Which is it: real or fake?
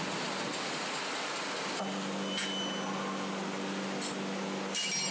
real